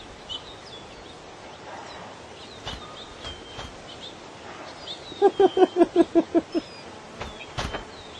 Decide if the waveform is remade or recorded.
recorded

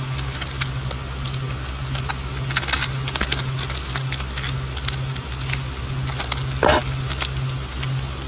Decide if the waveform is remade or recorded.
recorded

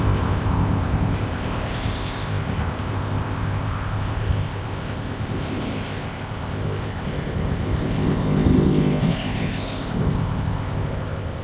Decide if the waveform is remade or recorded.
remade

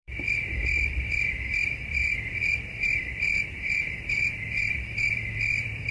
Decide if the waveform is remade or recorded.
remade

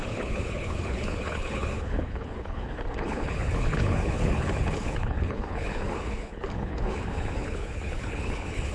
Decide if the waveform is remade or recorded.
remade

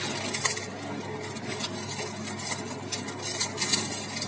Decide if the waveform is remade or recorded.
recorded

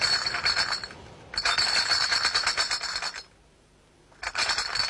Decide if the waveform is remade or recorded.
recorded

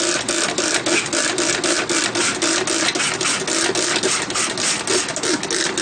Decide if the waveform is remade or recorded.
recorded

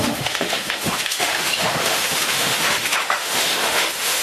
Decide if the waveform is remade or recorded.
remade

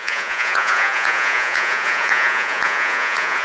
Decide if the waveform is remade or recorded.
remade